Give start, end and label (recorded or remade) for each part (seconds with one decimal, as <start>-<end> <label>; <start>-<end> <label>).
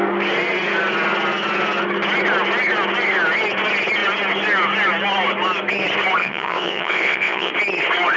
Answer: 0.0-6.2 recorded; 6.2-7.5 remade; 7.5-8.2 recorded